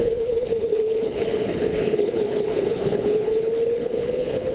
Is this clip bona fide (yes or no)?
no